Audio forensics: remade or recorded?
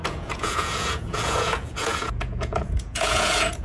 remade